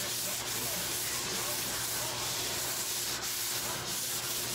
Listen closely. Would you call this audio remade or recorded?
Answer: recorded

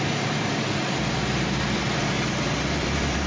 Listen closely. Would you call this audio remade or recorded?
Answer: remade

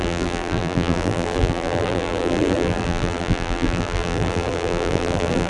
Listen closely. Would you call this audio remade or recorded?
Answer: remade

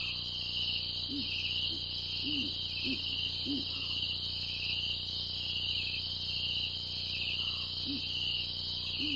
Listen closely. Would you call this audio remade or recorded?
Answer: recorded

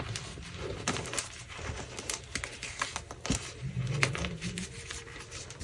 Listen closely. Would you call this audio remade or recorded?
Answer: remade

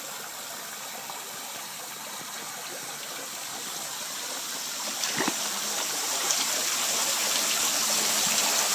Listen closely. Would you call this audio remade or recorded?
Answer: recorded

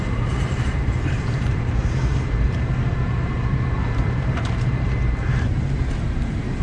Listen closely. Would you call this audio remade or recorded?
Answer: remade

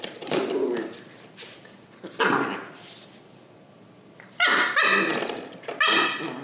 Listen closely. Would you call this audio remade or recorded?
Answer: remade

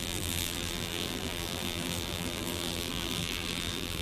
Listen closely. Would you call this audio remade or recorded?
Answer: remade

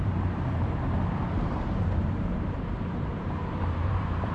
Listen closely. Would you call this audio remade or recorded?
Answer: remade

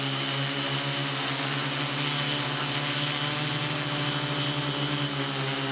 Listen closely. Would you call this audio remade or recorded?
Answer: recorded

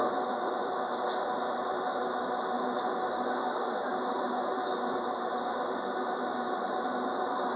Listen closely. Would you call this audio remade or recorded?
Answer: remade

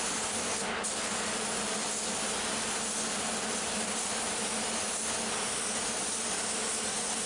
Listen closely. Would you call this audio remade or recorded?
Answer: recorded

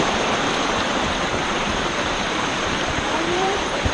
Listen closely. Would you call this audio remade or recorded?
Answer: remade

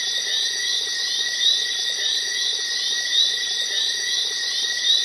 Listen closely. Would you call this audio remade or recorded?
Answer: remade